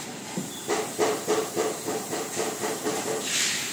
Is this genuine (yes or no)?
no